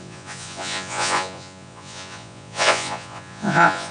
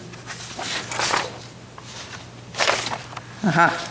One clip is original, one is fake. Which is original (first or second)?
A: second